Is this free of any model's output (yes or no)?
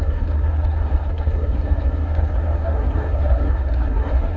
no